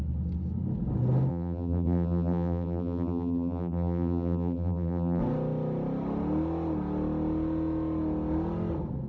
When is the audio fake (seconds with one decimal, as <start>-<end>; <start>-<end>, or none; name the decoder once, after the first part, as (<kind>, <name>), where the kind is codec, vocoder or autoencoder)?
1.3-5.2 (vocoder, BigVGAN v2)